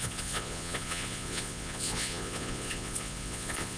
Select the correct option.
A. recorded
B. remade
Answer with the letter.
B